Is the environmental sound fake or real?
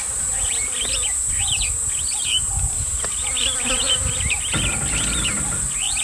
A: real